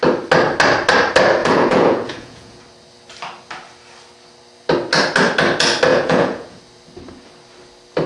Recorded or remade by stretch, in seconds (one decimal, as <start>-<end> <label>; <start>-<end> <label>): 0.0-1.4 recorded; 1.4-2.6 remade; 2.6-5.9 recorded; 5.9-6.6 remade; 6.6-8.1 recorded